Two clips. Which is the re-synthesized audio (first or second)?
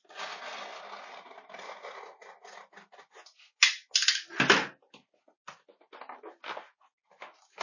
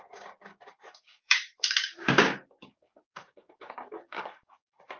second